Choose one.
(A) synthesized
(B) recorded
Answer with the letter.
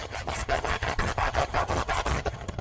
A